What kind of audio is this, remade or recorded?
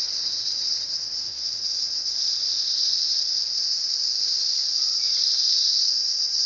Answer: remade